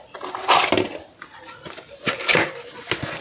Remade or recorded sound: recorded